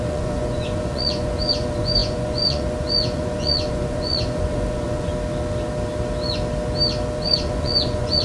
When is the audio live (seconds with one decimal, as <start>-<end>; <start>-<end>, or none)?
5.1-7.2

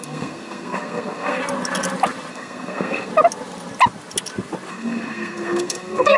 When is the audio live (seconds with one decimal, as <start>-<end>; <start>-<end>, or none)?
1.4-2.3; 3.1-4.7

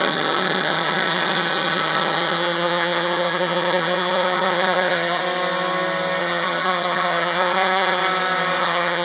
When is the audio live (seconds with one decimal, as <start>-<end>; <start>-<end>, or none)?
5.2-6.2; 8.0-8.6

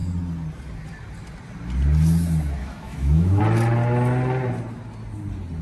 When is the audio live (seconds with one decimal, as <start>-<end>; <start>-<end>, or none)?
0.0-2.6; 3.4-5.6

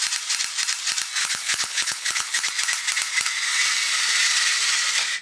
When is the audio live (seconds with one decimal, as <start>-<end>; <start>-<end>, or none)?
0.0-1.2; 2.5-5.2